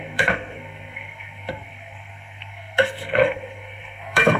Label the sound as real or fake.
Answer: fake